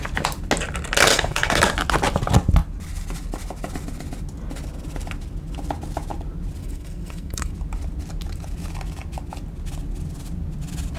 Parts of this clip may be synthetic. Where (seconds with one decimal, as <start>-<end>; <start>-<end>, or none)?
1.1-1.6; 6.6-7.5